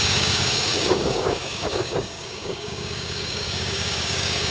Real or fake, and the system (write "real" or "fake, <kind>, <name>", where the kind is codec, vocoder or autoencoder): fake, codec, DAC